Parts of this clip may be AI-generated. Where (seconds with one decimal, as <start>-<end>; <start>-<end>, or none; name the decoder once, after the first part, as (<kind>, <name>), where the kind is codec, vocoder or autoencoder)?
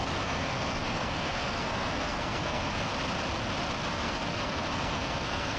0.0-2.9 (codec, SNAC); 3.9-5.6